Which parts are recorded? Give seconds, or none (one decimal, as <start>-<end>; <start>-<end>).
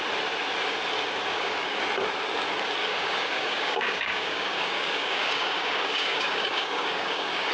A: 0.0-1.3; 1.8-2.8